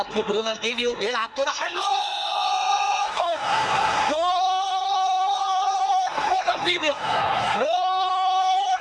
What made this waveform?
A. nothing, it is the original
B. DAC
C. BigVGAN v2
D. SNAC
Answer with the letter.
D